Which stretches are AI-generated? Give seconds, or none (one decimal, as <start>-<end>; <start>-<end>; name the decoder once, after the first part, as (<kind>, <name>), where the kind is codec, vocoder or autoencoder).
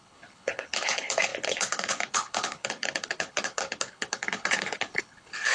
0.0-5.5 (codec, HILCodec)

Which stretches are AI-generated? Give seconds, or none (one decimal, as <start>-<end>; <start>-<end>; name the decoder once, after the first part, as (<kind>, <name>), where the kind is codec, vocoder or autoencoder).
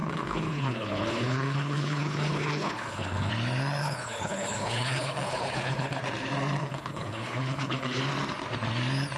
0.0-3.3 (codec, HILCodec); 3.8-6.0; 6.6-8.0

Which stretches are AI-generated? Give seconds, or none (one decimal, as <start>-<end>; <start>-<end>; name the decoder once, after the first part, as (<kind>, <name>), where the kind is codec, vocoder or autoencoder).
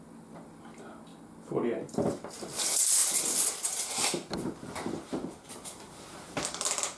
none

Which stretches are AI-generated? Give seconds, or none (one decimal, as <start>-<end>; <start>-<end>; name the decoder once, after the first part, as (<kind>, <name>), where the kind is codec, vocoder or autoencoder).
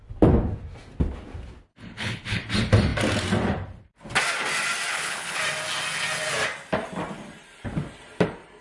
1.7-2.4 (codec, HILCodec); 4.9-5.4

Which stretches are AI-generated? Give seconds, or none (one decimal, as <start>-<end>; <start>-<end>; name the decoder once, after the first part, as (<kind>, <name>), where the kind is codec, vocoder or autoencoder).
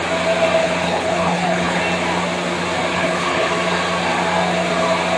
0.6-1.8 (codec, HILCodec); 2.9-3.5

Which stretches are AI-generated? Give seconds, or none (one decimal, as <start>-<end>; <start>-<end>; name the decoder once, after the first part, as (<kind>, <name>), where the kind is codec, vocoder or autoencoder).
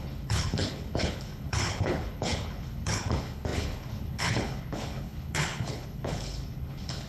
0.0-7.1 (codec, HILCodec)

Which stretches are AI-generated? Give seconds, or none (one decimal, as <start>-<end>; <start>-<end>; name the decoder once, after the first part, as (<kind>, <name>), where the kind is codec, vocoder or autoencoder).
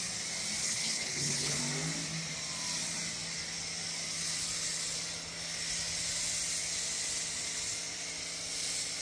0.6-1.6 (codec, HILCodec)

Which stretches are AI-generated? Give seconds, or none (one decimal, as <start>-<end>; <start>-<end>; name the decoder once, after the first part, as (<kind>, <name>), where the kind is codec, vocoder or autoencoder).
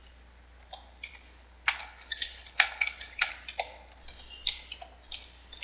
1.8-3.3 (codec, HILCodec)